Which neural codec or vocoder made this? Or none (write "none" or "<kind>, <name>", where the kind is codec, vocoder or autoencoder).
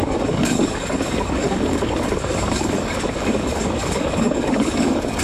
codec, DAC